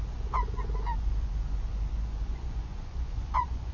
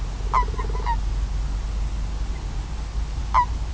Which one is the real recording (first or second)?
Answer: second